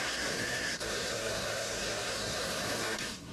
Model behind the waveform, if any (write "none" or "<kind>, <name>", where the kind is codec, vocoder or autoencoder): codec, SNAC